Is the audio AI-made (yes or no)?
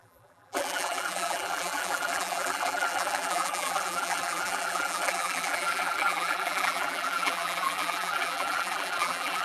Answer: yes